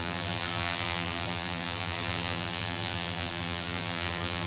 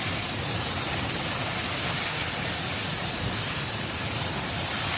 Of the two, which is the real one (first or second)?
second